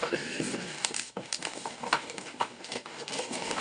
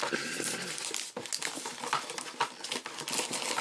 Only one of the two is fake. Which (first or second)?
first